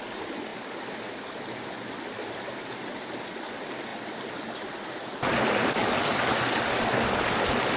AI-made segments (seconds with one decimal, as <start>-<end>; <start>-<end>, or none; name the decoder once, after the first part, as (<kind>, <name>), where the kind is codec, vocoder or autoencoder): none